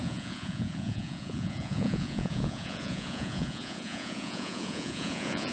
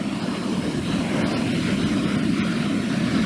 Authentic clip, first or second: second